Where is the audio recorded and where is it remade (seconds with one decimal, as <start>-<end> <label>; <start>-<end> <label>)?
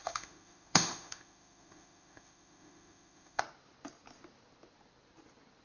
0.0-3.4 remade; 3.4-5.6 recorded